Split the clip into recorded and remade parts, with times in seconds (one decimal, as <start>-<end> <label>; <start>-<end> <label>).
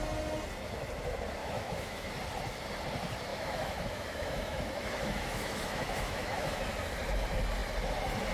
0.0-1.4 recorded; 1.4-2.1 remade; 2.1-3.3 recorded; 3.3-6.6 remade; 6.6-8.3 recorded